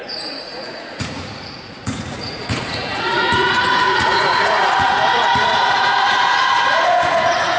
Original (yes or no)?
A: no